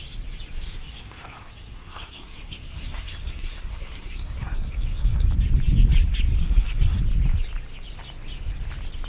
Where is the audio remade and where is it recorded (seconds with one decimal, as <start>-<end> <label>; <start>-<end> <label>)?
0.0-0.8 recorded; 0.8-5.3 remade; 5.3-6.4 recorded; 6.4-7.0 remade; 7.0-9.1 recorded